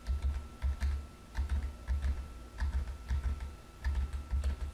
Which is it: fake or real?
real